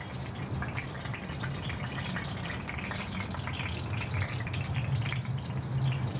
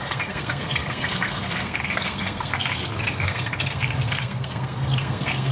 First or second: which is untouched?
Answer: first